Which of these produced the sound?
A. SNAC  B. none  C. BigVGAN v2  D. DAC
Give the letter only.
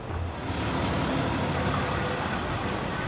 B